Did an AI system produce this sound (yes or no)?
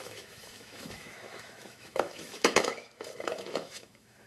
yes